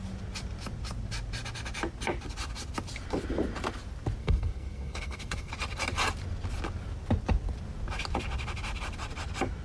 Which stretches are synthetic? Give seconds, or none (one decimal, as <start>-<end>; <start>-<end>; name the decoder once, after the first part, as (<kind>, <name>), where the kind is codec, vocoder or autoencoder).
4.2-5.5 (codec, SNAC)